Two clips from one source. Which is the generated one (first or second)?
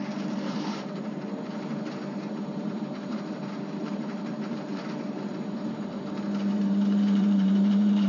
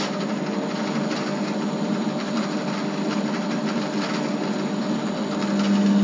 first